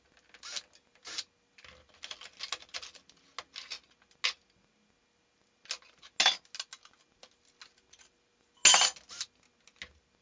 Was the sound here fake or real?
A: real